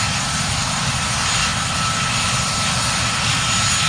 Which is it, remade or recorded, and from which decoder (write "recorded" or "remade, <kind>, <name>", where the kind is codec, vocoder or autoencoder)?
recorded